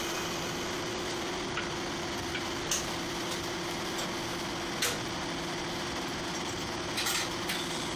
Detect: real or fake real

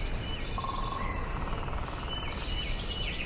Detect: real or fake real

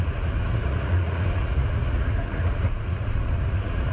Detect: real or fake fake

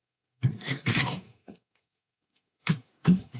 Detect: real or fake fake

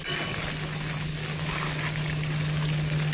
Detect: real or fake real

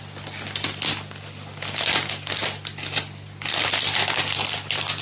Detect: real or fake real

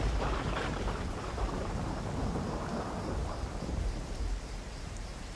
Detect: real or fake fake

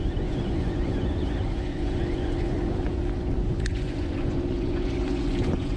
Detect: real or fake fake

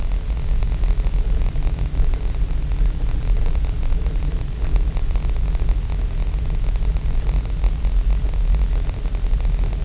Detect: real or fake real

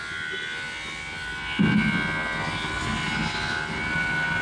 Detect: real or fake real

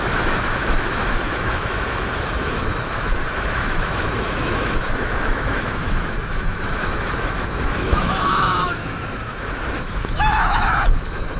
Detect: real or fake fake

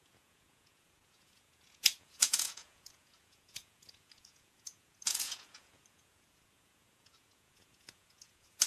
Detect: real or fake fake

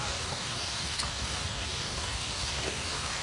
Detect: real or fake fake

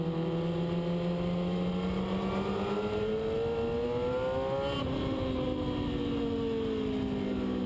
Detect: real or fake real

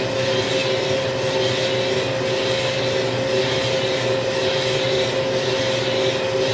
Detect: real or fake real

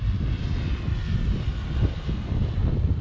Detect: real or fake real